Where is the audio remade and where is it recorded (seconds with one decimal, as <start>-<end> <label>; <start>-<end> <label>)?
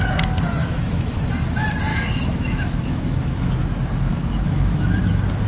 0.0-0.6 recorded; 0.6-1.2 remade; 1.2-1.9 recorded; 1.9-3.5 remade; 3.5-4.1 recorded; 4.1-5.0 remade; 5.0-5.5 recorded